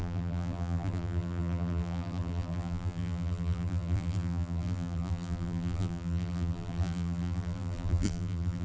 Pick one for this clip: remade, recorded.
remade